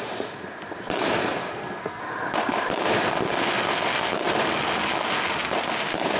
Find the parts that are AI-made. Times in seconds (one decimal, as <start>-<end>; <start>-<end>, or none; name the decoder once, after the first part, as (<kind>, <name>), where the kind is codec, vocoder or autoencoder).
1.4-2.0 (codec, SNAC)